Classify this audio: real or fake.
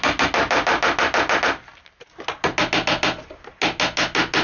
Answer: real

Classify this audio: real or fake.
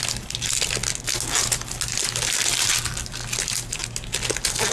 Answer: real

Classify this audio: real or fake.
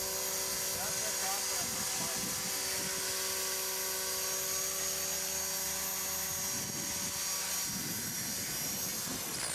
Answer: real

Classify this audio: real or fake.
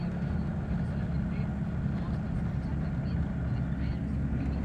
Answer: real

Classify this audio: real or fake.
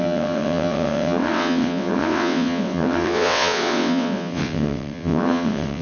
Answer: fake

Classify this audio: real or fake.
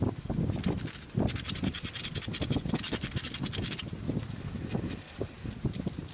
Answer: real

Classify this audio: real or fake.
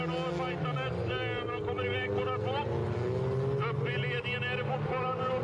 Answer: real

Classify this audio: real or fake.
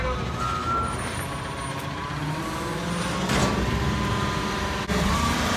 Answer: real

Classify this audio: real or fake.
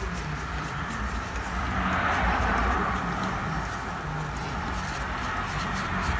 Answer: fake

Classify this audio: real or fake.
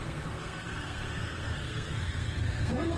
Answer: fake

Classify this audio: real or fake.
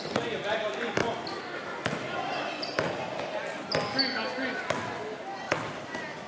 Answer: real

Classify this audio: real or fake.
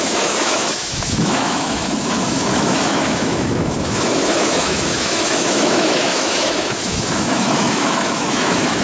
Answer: fake